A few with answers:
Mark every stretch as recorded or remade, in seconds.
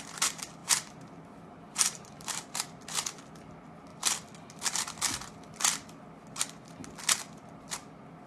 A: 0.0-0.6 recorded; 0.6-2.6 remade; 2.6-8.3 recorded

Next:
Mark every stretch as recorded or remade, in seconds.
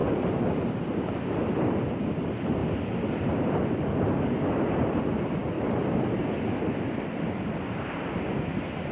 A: 0.0-2.6 remade; 2.6-3.5 recorded; 3.5-5.4 remade; 5.4-8.2 recorded; 8.2-8.9 remade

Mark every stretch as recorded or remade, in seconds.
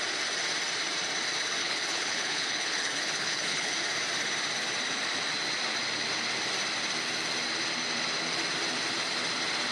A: 0.0-1.6 recorded; 1.6-3.7 remade; 3.7-9.7 recorded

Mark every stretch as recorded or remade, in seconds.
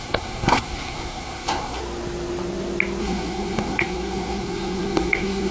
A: 0.0-1.8 remade; 1.8-3.0 recorded; 3.0-5.5 remade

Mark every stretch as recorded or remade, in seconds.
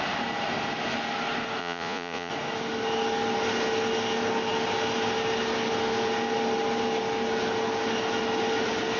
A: 0.0-1.6 recorded; 1.6-2.3 remade; 2.3-9.0 recorded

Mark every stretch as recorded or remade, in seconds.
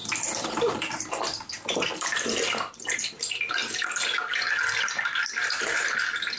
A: 0.0-6.4 recorded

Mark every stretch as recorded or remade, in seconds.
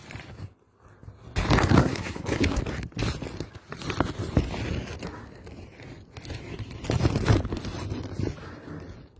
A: 0.0-1.8 recorded; 1.8-2.6 remade; 2.6-9.2 recorded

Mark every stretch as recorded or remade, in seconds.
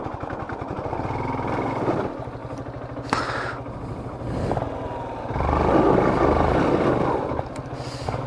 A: 0.0-8.3 recorded